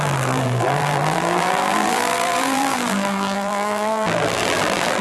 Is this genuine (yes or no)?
no